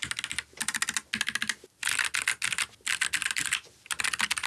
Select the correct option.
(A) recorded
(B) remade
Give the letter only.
A